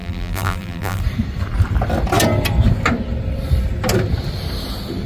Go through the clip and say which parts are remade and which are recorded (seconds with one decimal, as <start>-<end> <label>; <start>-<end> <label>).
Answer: 0.0-1.0 remade; 1.0-5.1 recorded